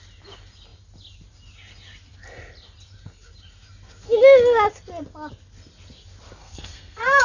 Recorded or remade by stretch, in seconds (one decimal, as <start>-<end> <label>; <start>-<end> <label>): 0.0-6.4 recorded; 6.4-7.2 remade